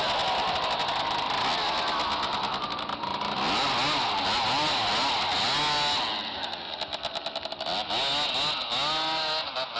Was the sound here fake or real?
real